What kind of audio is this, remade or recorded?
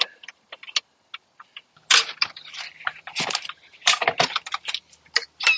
recorded